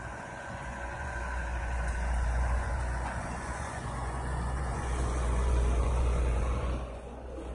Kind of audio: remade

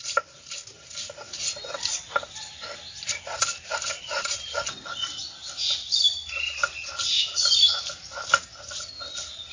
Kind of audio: recorded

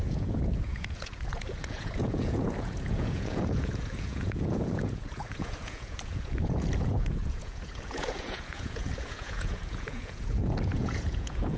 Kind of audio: remade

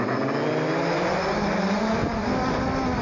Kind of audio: recorded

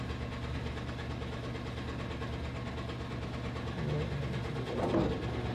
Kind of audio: recorded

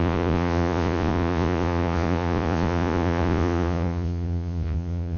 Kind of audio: remade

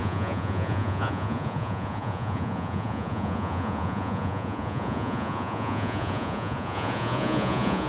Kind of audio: remade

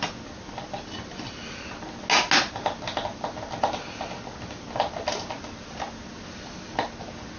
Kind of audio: recorded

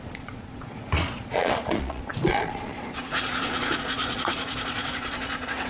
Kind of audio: remade